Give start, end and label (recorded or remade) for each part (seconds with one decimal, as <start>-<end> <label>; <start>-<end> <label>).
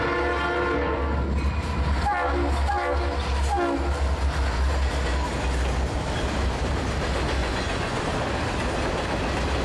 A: 0.0-7.4 recorded; 7.4-8.0 remade; 8.0-9.6 recorded